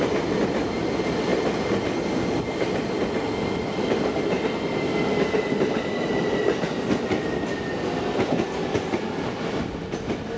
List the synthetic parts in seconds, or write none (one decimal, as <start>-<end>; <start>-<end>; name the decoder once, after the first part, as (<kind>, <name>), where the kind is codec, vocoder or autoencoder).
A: none

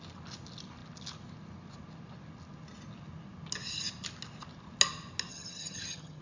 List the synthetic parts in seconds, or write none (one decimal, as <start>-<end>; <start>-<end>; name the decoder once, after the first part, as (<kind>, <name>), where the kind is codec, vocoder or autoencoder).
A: 5.3-6.2 (vocoder, HiFi-GAN)

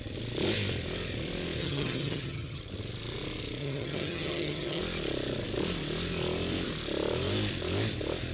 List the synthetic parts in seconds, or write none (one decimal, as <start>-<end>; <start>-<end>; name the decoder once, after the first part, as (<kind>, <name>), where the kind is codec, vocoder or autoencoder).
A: 1.6-2.6 (vocoder, HiFi-GAN); 3.6-4.8

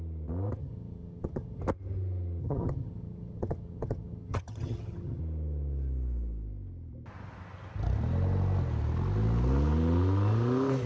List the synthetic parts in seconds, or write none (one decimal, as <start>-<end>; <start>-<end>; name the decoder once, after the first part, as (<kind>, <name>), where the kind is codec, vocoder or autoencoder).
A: 0.6-1.6 (vocoder, HiFi-GAN); 2.4-5.2

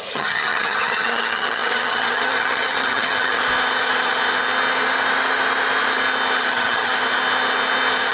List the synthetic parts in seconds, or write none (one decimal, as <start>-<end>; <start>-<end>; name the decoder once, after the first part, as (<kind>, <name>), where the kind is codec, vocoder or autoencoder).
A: 0.0-3.4 (vocoder, HiFi-GAN); 6.5-6.9

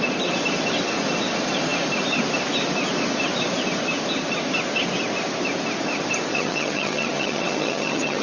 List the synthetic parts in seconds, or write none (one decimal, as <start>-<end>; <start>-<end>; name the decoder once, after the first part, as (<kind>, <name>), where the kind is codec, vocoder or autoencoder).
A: 6.3-8.2 (vocoder, HiFi-GAN)

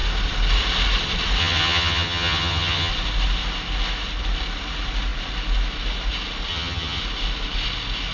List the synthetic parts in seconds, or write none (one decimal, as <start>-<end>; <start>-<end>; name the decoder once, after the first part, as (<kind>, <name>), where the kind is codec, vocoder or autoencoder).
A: 1.4-2.9 (vocoder, HiFi-GAN); 6.5-7.0